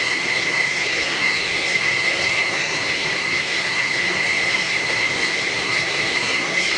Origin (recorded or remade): remade